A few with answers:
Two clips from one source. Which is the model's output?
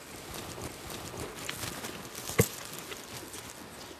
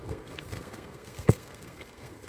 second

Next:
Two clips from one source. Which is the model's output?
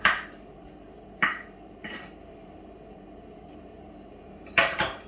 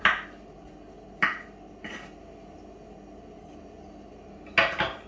first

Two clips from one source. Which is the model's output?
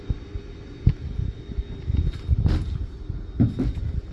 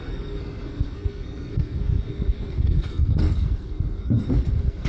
second